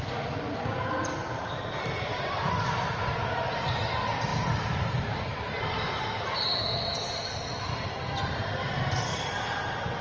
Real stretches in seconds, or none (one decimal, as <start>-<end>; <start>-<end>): 0.0-1.3; 2.5-4.3; 9.0-10.0